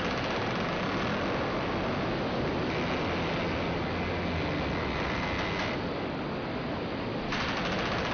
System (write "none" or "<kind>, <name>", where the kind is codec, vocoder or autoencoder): none